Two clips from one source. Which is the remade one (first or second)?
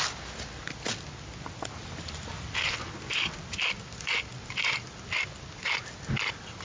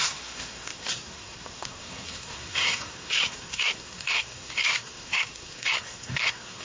second